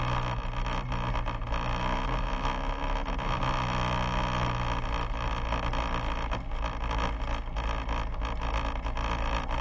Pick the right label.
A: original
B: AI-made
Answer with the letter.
A